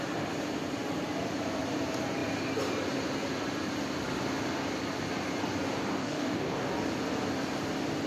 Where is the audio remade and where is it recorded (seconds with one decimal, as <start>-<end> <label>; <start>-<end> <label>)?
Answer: 0.0-6.0 recorded; 6.0-6.7 remade; 6.7-8.1 recorded